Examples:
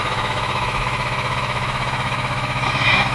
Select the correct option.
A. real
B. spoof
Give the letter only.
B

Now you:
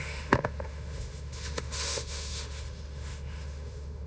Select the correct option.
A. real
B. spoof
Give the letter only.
B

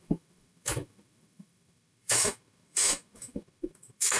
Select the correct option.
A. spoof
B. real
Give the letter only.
A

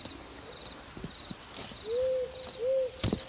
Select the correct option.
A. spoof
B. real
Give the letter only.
B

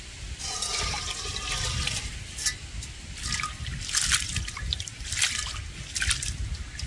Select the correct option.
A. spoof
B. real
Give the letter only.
B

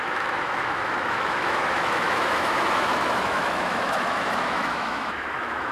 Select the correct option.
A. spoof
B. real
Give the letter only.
A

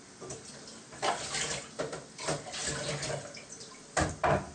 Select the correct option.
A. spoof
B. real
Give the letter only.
B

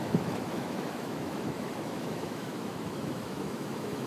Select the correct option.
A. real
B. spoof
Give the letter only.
B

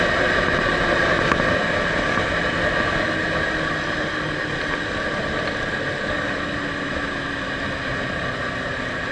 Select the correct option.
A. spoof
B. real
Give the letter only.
B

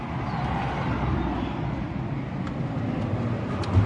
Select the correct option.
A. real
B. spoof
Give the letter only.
A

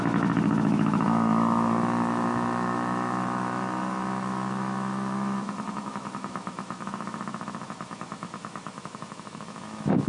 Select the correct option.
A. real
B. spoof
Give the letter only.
B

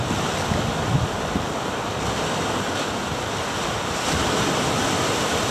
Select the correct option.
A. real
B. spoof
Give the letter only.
A